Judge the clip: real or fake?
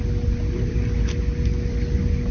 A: real